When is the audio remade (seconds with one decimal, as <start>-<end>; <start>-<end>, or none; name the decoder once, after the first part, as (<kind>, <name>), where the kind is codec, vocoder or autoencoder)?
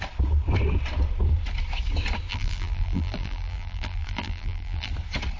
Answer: 2.3-4.9 (vocoder, BigVGAN v2)